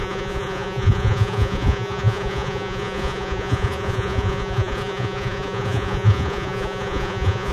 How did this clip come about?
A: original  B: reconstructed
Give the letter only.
B